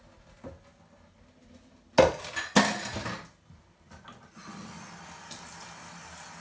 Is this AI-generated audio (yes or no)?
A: no